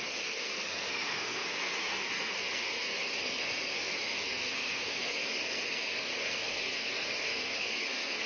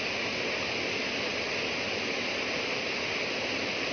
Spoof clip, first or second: first